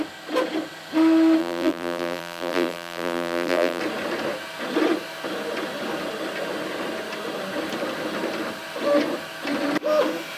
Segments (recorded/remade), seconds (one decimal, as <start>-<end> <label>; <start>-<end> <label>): 0.0-1.4 recorded; 1.4-3.8 remade; 3.8-10.4 recorded